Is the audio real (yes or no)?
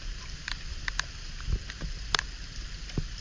yes